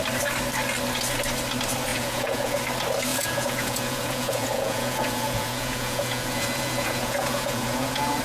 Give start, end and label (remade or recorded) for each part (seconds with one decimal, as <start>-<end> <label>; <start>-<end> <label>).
0.0-1.9 recorded; 1.9-2.6 remade; 2.6-3.1 recorded; 3.1-8.2 remade